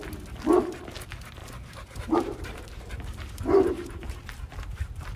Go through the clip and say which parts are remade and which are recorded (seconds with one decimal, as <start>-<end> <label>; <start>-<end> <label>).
0.0-1.4 recorded; 1.4-4.5 remade; 4.5-5.2 recorded